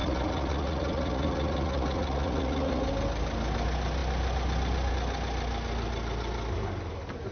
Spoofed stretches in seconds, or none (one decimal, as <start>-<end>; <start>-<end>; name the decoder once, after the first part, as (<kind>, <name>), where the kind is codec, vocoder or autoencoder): 0.0-2.9 (vocoder, Vocos)